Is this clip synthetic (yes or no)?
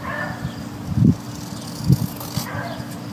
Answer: no